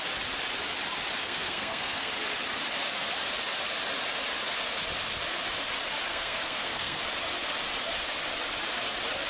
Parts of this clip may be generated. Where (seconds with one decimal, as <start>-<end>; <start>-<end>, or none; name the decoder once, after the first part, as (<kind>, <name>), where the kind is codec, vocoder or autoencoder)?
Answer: 1.2-2.1 (codec, SNAC); 6.1-7.0